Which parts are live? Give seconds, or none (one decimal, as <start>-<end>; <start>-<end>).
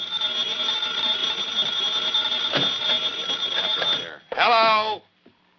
0.0-5.6